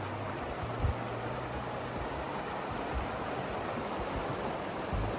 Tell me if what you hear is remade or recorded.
recorded